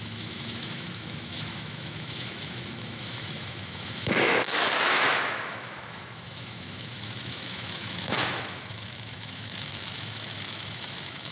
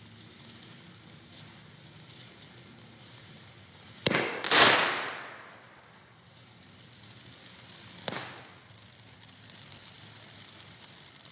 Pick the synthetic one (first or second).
first